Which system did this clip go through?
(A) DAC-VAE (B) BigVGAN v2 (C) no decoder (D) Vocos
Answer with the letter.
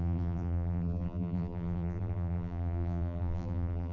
B